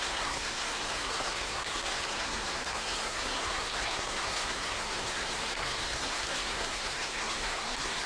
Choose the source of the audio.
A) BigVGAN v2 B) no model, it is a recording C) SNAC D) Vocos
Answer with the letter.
C